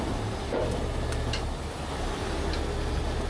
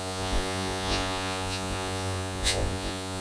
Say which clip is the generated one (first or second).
second